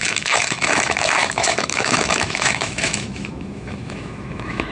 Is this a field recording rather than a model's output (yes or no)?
no